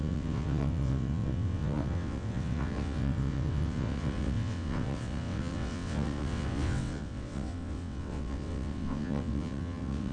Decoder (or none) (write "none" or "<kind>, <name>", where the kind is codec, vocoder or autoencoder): vocoder, WaveNeXt